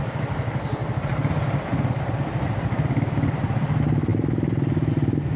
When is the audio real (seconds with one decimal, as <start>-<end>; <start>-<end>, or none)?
0.0-1.1; 3.4-4.1; 4.9-5.4